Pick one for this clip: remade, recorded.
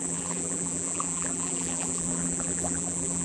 remade